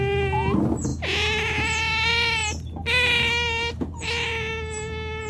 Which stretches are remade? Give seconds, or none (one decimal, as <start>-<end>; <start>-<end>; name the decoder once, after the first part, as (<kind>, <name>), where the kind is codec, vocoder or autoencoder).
none